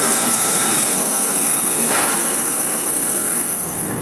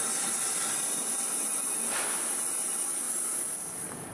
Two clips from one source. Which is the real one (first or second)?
second